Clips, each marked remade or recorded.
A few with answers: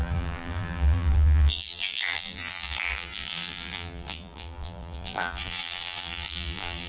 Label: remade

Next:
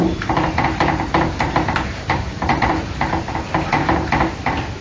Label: remade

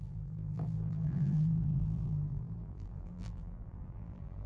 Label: remade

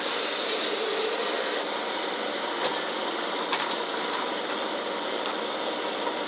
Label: remade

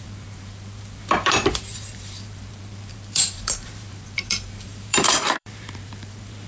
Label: remade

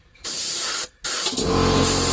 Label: remade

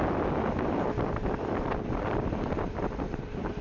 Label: remade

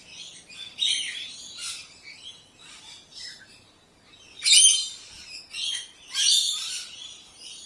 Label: remade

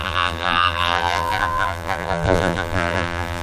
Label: remade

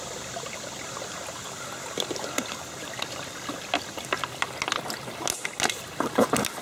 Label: recorded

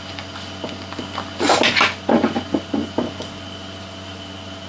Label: recorded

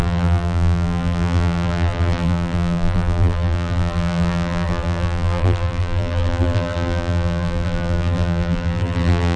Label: remade